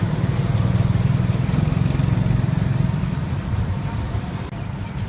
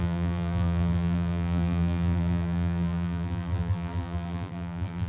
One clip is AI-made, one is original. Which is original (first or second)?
first